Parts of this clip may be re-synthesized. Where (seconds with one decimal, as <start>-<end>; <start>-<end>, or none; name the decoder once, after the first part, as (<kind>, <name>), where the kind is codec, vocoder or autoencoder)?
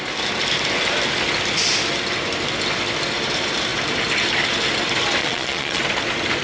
5.2-5.8 (vocoder, Vocos)